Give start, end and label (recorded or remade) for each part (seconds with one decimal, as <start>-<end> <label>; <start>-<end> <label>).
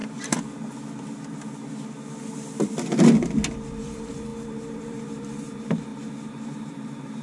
0.0-3.8 recorded; 3.8-7.2 remade